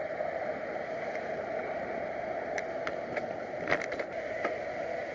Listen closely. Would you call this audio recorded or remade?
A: recorded